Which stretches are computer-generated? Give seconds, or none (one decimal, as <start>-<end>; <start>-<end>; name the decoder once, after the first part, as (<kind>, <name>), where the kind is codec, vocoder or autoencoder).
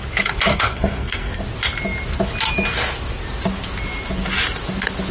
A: 0.5-1.4 (codec, SNAC)